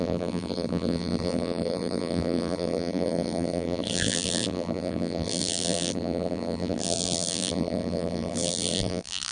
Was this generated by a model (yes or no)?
yes